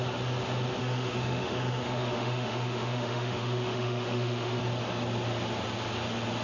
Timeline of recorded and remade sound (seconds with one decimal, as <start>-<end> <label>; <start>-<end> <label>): 0.0-0.8 recorded; 0.8-4.6 remade; 4.6-6.4 recorded